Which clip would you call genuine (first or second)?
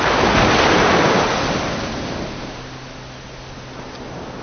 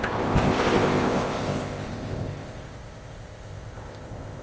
first